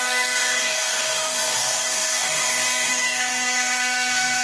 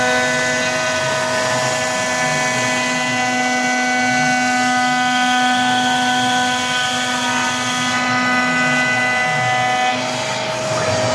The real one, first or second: second